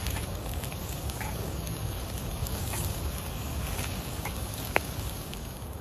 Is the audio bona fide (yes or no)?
no